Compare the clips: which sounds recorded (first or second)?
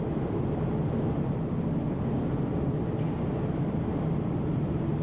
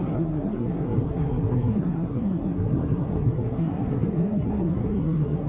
first